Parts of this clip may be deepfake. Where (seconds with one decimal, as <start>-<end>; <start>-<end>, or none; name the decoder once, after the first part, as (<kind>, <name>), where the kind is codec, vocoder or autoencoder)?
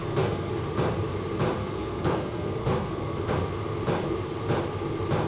0.0-0.5 (codec, SNAC); 1.6-3.3